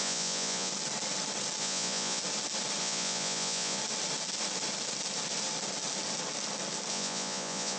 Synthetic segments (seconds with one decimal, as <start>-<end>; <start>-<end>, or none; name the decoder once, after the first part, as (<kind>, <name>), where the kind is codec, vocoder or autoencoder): 0.0-0.7 (vocoder, Vocos); 1.6-2.2; 2.8-3.8; 6.9-7.8